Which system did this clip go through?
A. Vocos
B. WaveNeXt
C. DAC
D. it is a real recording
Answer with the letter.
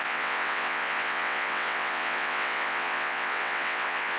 B